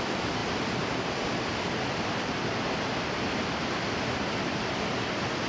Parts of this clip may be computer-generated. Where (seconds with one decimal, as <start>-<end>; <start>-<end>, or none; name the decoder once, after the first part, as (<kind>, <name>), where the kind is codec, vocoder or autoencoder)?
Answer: none

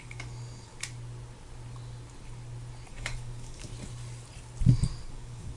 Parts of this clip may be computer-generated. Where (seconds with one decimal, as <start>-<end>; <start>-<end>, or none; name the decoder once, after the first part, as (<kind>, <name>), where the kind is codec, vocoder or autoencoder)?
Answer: 0.0-0.7 (codec, DAC); 2.9-3.7; 5.1-5.6

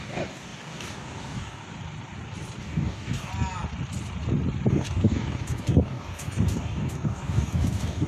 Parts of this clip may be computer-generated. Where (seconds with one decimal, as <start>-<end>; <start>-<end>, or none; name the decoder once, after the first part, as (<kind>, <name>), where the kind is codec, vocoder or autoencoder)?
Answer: 0.0-1.6 (codec, DAC); 2.6-3.3; 4.7-8.1

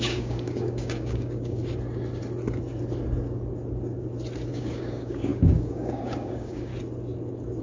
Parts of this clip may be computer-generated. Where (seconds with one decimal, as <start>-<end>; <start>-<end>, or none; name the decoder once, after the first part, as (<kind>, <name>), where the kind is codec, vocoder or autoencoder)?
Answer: 0.0-1.6 (codec, DAC); 4.5-6.7

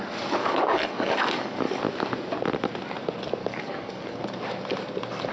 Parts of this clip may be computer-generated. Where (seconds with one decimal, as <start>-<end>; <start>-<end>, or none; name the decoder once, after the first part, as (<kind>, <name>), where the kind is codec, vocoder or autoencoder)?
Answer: 0.4-1.8 (codec, DAC); 3.4-4.2